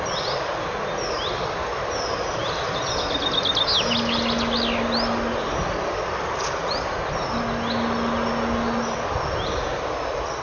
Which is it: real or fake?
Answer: real